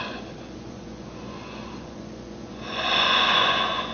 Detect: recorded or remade remade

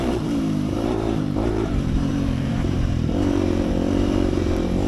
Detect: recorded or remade remade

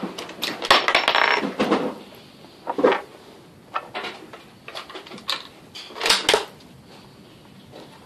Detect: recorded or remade recorded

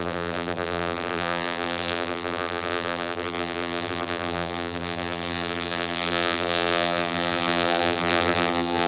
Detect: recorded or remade remade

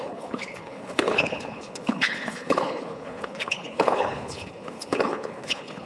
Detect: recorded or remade remade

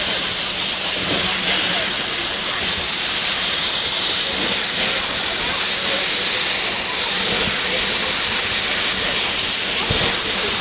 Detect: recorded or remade recorded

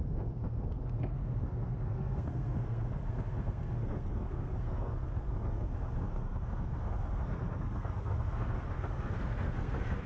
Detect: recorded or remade remade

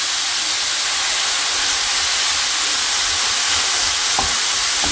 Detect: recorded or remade recorded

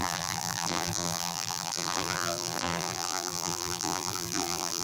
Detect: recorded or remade remade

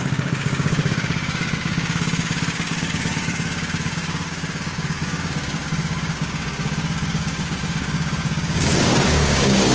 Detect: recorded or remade remade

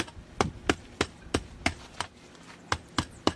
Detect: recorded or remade recorded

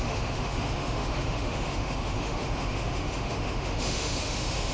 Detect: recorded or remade remade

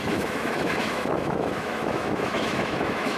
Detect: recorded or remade remade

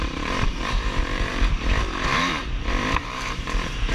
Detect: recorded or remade remade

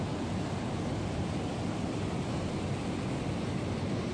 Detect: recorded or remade recorded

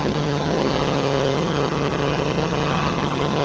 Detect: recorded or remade remade